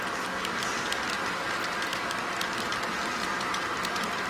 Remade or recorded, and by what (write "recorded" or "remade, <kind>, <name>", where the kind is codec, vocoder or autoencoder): recorded